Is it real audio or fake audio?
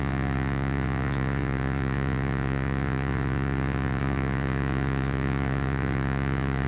fake